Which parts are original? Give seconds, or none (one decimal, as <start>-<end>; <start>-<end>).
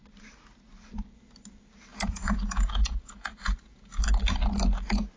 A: 0.0-1.9; 4.0-5.2